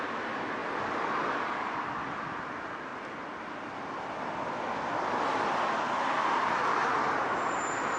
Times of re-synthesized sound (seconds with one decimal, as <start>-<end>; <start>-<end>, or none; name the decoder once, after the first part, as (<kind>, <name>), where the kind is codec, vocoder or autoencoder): none